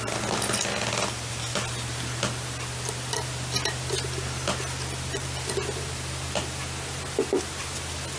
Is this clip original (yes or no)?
yes